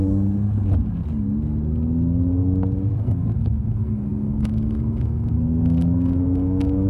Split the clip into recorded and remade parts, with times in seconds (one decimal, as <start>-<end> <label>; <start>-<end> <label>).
0.0-3.0 recorded; 3.0-6.9 remade